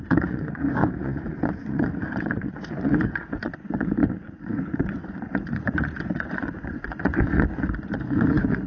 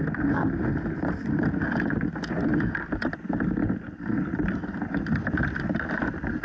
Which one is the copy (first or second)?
first